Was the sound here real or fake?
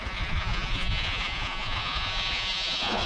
fake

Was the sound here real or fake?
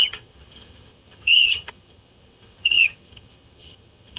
fake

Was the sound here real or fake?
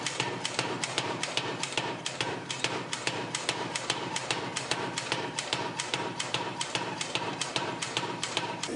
fake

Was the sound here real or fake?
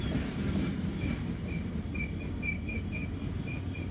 real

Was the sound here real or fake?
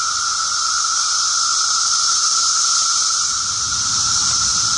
real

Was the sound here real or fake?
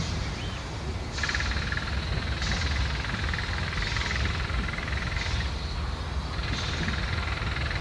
real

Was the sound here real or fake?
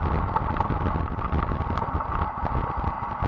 real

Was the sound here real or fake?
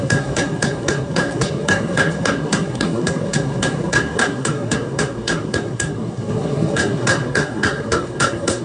fake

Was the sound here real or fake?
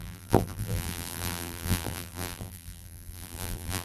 fake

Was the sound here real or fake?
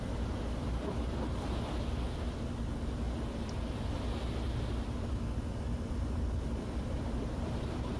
real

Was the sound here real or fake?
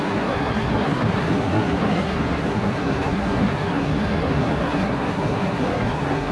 fake